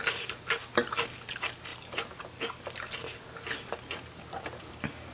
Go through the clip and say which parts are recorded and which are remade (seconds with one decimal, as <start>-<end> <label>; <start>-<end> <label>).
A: 0.0-5.1 recorded